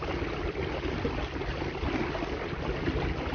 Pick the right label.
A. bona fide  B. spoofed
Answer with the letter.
A